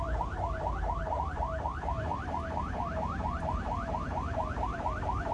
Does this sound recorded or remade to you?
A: remade